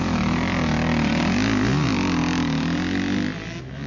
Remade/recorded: recorded